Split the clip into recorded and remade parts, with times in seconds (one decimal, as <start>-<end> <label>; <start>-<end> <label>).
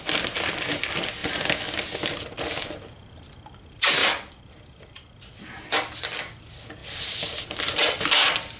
0.0-8.6 recorded